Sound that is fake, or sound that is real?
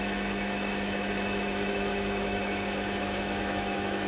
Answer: fake